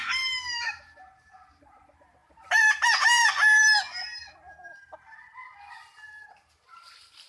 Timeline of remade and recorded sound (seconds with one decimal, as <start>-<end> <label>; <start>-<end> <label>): 0.0-7.3 recorded